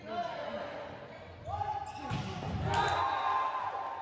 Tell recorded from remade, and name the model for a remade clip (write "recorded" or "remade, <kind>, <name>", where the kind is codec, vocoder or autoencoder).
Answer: recorded